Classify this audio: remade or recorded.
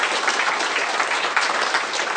recorded